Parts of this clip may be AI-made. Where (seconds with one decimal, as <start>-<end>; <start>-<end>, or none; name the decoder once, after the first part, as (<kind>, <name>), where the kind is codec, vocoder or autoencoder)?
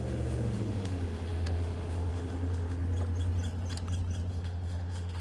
0.0-2.8 (autoencoder, DAC-VAE); 4.3-5.2